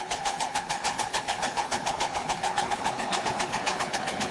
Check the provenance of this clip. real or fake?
fake